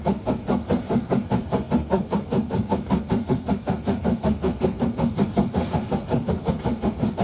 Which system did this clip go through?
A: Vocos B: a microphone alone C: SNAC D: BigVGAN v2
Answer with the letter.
C